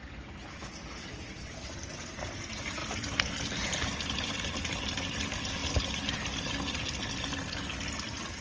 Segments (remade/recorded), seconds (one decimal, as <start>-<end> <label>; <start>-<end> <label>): 0.0-8.4 recorded